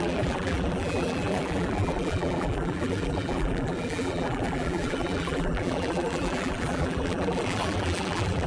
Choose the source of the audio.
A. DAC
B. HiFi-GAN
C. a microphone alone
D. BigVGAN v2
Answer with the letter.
D